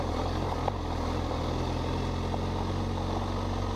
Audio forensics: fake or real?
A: real